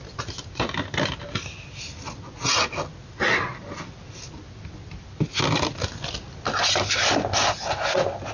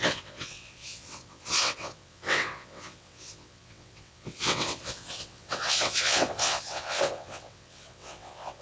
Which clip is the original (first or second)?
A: first